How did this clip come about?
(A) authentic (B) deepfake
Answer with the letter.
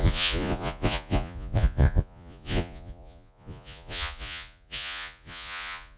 B